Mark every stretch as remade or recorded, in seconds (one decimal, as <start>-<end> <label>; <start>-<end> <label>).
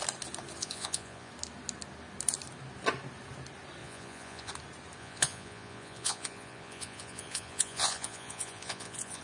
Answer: 0.0-0.6 recorded; 0.6-1.3 remade; 1.3-3.8 recorded; 3.8-4.5 remade; 4.5-5.0 recorded; 5.0-9.2 remade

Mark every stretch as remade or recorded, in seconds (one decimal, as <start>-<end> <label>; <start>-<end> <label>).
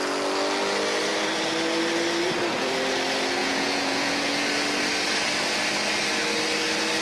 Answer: 0.0-3.4 recorded; 3.4-4.3 remade; 4.3-7.0 recorded